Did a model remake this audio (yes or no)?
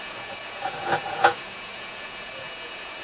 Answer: yes